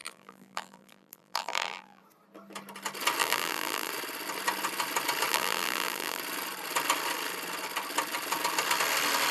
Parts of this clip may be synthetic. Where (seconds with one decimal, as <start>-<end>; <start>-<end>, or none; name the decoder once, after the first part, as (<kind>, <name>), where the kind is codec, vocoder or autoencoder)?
0.0-2.0 (vocoder, BigVGAN v2); 3.2-3.9; 5.3-6.2